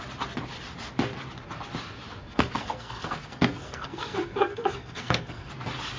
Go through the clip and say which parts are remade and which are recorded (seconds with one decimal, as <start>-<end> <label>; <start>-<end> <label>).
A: 0.0-2.2 recorded; 2.2-5.5 remade; 5.5-6.0 recorded